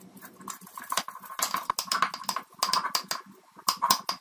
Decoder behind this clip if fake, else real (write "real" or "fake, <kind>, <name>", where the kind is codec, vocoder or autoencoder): real